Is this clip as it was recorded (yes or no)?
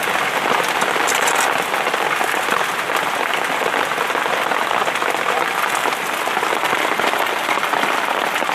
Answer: yes